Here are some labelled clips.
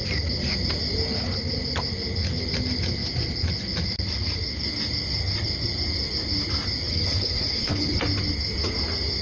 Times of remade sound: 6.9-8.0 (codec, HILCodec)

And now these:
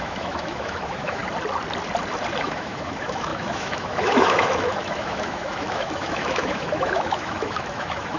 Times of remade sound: 0.0-1.2 (autoencoder, DAC-VAE); 2.4-8.2

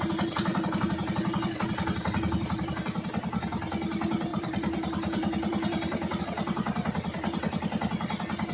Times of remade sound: 0.5-2.7 (vocoder, BigVGAN v2); 4.3-6.2

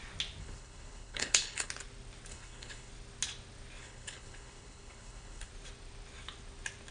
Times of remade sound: 0.4-1.7 (codec, HILCodec); 2.3-2.9; 3.8-5.5

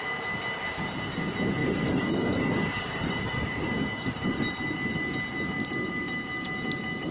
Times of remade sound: 1.6-4.4 (codec, DAC)

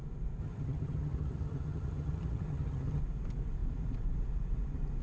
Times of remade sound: 0.4-3.0 (vocoder, HiFi-GAN)

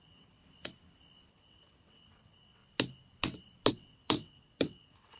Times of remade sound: 0.0-0.4 (vocoder, WaveNeXt); 1.3-2.6; 3.7-5.2

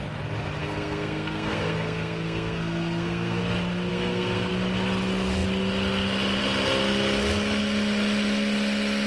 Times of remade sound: 0.6-3.4 (codec, SNAC); 3.9-4.5